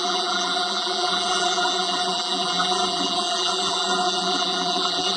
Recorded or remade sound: remade